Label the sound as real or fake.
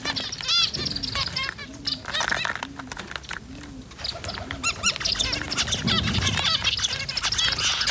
real